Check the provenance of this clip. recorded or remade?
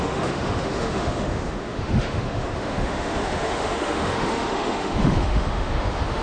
remade